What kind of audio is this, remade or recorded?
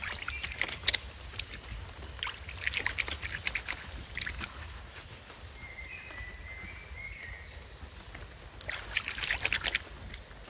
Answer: recorded